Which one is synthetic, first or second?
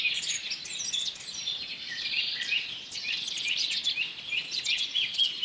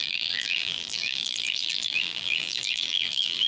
second